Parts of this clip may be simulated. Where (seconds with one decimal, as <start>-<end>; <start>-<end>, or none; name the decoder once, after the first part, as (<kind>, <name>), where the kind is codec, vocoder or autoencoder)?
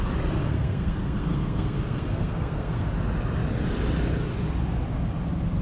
0.4-2.9 (codec, SNAC)